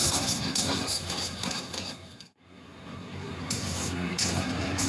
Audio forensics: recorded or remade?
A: remade